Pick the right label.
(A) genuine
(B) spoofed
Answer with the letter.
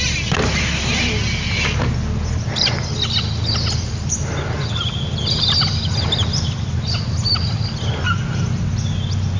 A